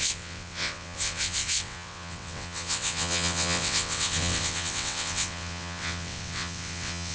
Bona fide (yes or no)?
no